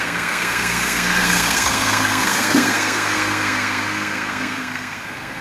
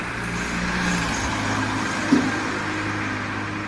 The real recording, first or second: second